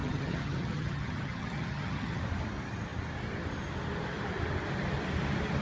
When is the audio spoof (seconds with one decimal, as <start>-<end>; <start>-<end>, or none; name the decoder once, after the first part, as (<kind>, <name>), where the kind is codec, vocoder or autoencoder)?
0.0-2.2 (vocoder, HiFi-GAN)